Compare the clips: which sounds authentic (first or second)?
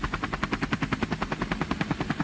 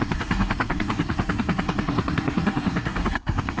first